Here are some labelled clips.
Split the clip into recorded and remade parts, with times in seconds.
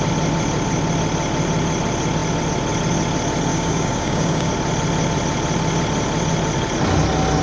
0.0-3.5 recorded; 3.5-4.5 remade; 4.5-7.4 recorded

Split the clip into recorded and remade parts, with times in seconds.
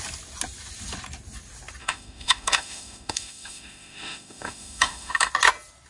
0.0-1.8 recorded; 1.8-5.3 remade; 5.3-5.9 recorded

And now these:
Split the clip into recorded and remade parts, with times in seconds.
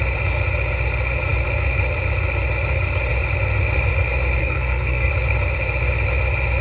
0.0-4.4 recorded; 4.4-5.1 remade; 5.1-6.6 recorded